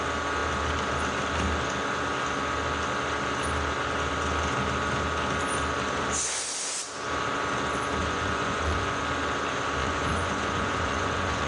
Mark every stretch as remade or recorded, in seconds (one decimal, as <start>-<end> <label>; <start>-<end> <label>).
0.0-8.0 recorded; 8.0-9.0 remade; 9.0-9.8 recorded; 9.8-11.5 remade